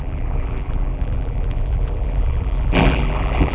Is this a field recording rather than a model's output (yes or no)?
no